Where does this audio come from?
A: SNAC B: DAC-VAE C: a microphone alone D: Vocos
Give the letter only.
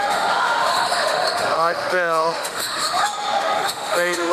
B